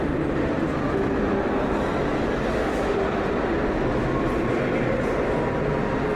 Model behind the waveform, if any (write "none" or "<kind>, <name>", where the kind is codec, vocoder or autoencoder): none